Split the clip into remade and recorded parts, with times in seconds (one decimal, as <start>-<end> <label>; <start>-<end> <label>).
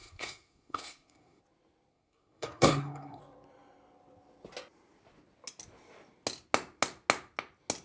0.0-1.4 remade; 1.4-1.9 recorded; 1.9-3.2 remade; 3.2-7.8 recorded